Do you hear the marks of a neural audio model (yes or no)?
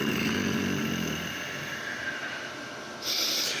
no